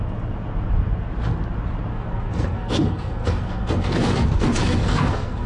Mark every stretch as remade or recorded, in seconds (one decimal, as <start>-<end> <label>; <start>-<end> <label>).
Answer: 0.0-1.9 recorded; 1.9-5.5 remade

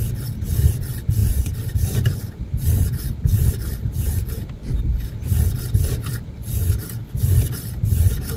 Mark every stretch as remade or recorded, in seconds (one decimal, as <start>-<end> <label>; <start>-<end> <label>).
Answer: 0.0-1.2 recorded; 1.2-4.5 remade; 4.5-7.0 recorded; 7.0-8.4 remade

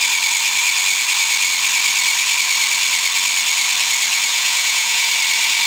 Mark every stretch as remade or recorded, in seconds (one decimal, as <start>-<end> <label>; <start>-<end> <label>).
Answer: 0.0-4.3 recorded; 4.3-5.1 remade; 5.1-5.7 recorded

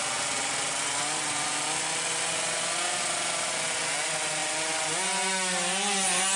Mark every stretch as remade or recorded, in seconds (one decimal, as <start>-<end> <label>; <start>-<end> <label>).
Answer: 0.0-6.4 recorded

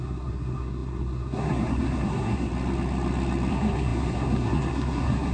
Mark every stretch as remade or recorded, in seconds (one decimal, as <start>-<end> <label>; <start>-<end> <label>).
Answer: 0.0-2.5 remade; 2.5-3.5 recorded; 3.5-5.3 remade

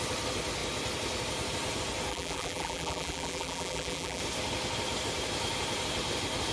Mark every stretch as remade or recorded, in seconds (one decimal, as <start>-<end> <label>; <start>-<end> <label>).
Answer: 0.0-2.1 recorded; 2.1-4.2 remade; 4.2-6.5 recorded

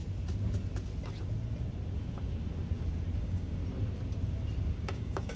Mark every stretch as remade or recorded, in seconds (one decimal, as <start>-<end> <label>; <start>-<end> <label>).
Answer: 0.0-3.2 recorded; 3.2-3.6 remade; 3.6-4.8 recorded; 4.8-5.4 remade